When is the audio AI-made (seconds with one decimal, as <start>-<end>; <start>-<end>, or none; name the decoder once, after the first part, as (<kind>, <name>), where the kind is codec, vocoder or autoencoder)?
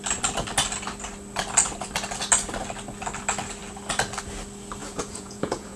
4.8-5.8 (vocoder, Vocos)